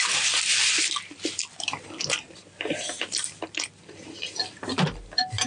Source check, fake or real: real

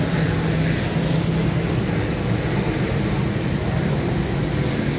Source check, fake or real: real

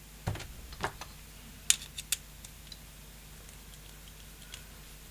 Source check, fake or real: real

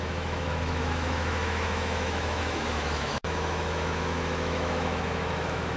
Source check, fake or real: fake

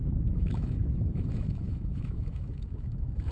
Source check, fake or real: fake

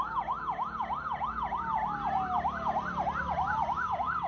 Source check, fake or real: real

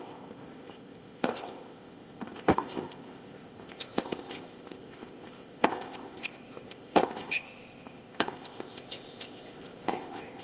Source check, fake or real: fake